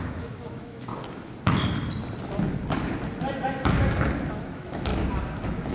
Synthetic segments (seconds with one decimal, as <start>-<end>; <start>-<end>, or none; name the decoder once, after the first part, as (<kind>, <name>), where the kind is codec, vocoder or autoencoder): 0.0-0.9 (autoencoder, DAC-VAE); 4.3-4.9